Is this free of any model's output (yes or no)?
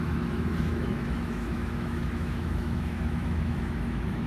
no